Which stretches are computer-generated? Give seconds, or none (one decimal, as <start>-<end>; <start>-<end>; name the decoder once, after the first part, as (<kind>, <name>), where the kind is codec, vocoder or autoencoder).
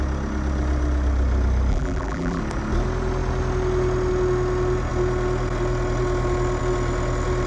1.7-2.4 (vocoder, BigVGAN v2)